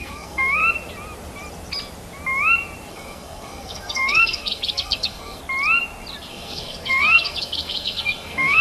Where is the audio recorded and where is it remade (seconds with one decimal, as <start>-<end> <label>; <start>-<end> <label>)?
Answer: 0.0-0.6 remade; 0.6-2.9 recorded; 2.9-5.4 remade; 5.4-6.3 recorded; 6.3-8.6 remade